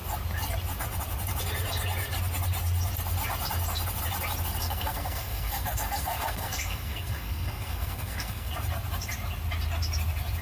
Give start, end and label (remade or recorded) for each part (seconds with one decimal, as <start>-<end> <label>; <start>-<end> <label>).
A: 0.0-4.6 recorded; 4.6-8.5 remade; 8.5-10.4 recorded